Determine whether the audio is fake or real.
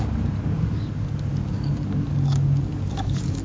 fake